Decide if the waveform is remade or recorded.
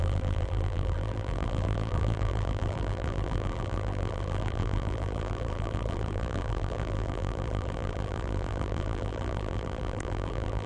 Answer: remade